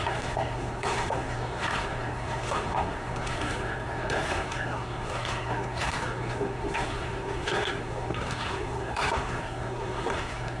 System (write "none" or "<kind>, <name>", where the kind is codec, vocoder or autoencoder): codec, SNAC